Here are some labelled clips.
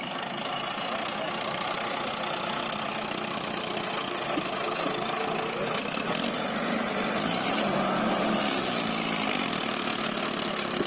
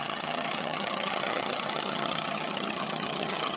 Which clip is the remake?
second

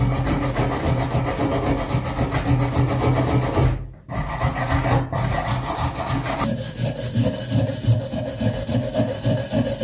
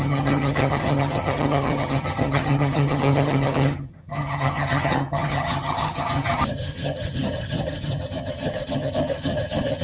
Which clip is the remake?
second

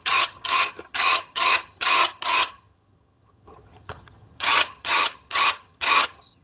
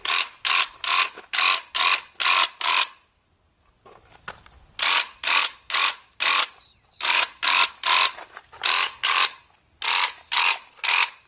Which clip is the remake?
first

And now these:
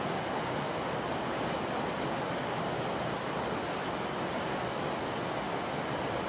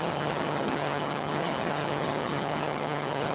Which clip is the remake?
second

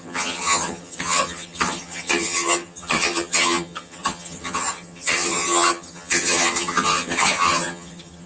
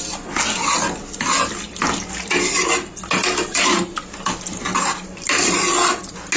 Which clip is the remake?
first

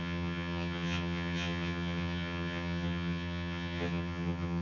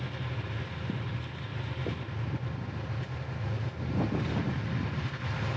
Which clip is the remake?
first